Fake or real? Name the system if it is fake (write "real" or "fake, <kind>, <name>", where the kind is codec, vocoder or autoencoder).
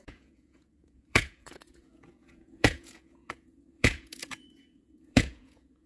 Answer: fake, vocoder, Vocos